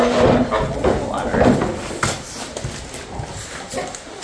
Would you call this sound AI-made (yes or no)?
no